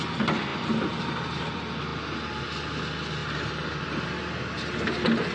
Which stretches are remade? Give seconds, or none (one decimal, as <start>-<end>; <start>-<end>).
3.2-4.0